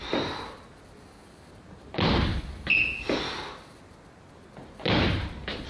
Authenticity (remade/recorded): recorded